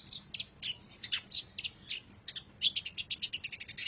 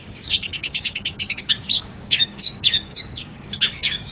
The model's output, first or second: second